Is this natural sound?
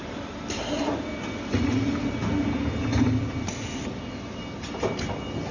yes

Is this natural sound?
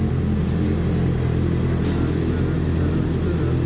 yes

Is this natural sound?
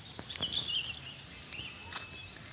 yes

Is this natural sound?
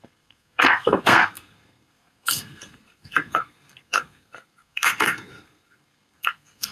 no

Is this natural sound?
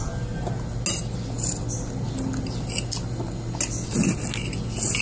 yes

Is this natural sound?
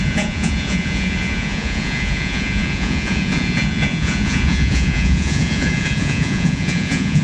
no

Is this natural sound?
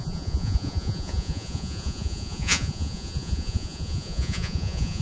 no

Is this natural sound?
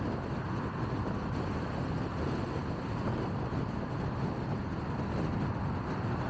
yes